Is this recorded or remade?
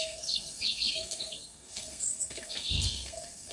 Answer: remade